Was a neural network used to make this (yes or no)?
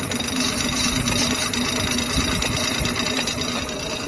no